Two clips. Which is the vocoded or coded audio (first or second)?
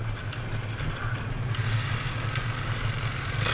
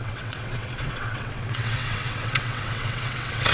second